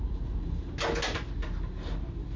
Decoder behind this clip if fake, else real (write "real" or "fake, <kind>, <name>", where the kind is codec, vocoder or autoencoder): real